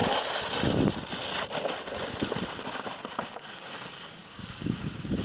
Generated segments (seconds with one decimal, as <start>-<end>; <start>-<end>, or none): 3.1-5.2